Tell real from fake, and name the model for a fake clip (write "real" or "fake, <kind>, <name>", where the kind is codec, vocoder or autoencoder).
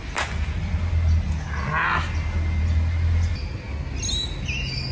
real